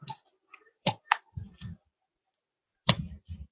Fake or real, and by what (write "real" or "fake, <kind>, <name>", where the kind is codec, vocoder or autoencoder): real